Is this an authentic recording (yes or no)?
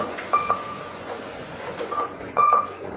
no